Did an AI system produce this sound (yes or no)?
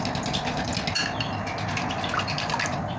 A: no